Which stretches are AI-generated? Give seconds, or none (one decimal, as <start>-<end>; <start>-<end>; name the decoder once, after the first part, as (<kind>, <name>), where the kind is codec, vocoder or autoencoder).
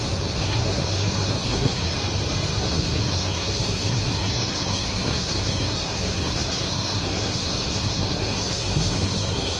0.0-1.9 (codec, SNAC); 2.6-9.6